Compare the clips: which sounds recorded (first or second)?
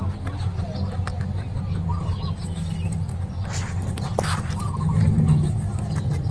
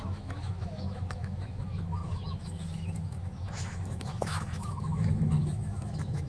first